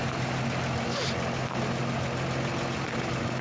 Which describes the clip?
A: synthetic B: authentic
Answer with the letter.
B